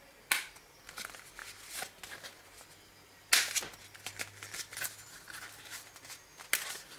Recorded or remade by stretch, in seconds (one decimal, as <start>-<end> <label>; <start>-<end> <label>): 0.0-7.0 recorded